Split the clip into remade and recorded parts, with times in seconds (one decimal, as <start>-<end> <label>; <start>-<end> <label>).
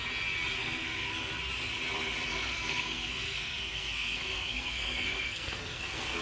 0.0-0.6 recorded; 0.6-1.3 remade; 1.3-2.3 recorded; 2.3-6.2 remade